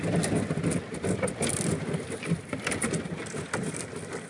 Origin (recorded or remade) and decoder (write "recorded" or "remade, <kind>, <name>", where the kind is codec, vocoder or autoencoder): recorded